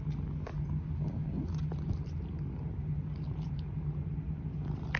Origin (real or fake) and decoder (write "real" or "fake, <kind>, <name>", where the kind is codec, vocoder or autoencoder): real